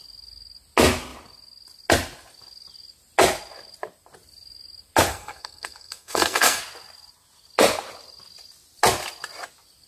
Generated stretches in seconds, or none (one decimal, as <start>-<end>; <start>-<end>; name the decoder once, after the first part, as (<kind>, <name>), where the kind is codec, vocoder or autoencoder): 5.1-6.6 (codec, SNAC)